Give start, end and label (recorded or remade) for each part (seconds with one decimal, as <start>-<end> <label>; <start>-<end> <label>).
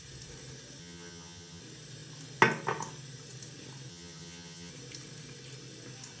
0.0-0.8 recorded; 0.8-1.6 remade; 1.6-3.9 recorded; 3.9-4.7 remade; 4.7-6.2 recorded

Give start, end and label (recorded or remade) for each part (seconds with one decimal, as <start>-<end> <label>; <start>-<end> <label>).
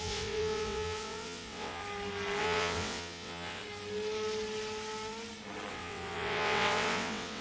0.0-1.8 remade; 1.8-2.4 recorded; 2.4-3.6 remade; 3.6-5.7 recorded; 5.7-7.4 remade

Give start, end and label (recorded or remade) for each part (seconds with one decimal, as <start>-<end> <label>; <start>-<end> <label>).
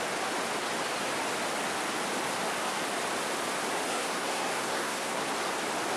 0.0-3.9 recorded; 3.9-5.2 remade; 5.2-6.0 recorded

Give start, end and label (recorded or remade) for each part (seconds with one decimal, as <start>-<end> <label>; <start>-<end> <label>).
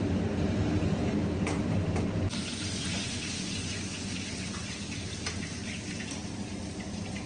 0.0-2.4 recorded; 2.4-4.7 remade; 4.7-7.3 recorded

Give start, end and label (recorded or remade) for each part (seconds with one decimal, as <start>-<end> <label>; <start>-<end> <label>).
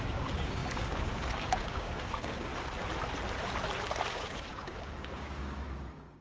0.0-2.5 remade; 2.5-4.1 recorded; 4.1-6.2 remade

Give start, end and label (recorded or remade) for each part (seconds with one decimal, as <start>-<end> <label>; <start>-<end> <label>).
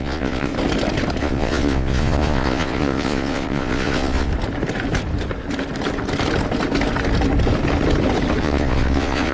0.0-0.5 remade; 0.5-1.2 recorded; 1.2-4.3 remade; 4.3-8.4 recorded; 8.4-9.3 remade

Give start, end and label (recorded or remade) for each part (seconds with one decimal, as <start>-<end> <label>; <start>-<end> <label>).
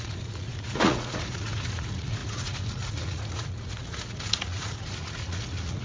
0.0-5.8 remade